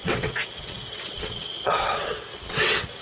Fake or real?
fake